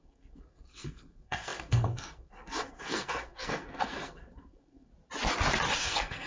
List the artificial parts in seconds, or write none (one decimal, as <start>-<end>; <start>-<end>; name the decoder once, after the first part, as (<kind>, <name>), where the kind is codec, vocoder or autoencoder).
0.0-4.9 (codec, SNAC); 5.8-6.3